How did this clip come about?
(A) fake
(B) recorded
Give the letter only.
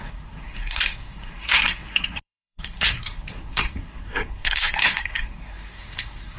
A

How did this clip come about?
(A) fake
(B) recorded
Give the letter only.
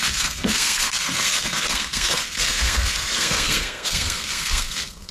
A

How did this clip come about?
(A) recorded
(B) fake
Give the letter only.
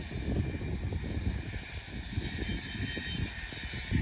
A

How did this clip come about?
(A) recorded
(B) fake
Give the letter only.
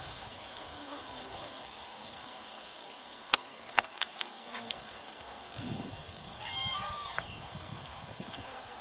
B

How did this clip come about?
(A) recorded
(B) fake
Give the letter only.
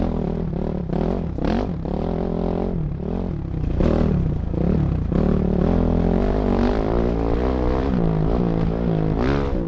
A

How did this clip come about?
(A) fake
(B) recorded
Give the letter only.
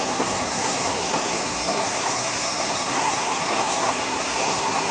A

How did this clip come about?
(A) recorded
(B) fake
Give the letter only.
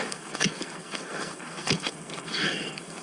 B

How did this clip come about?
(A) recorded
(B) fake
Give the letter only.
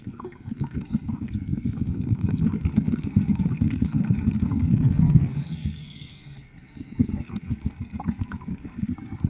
B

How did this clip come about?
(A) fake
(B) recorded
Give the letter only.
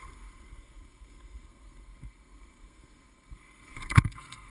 A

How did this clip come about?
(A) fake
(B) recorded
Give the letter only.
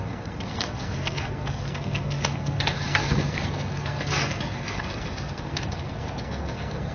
A